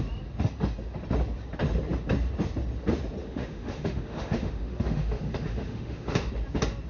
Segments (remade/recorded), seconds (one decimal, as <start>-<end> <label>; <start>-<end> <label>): 0.0-3.2 recorded; 3.2-6.3 remade; 6.3-6.9 recorded

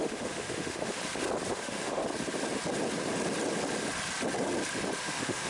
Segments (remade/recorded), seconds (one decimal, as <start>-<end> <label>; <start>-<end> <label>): 0.0-1.0 remade; 1.0-1.5 recorded; 1.5-2.0 remade; 2.0-5.0 recorded; 5.0-5.5 remade